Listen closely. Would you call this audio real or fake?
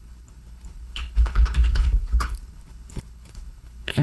fake